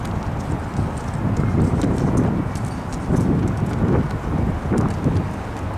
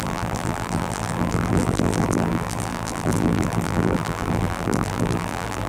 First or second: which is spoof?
second